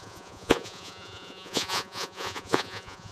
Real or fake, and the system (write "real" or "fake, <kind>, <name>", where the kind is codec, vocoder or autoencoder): fake, vocoder, Vocos